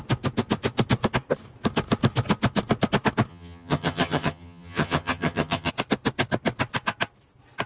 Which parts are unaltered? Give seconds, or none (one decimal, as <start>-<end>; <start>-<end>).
0.0-3.3; 5.7-7.7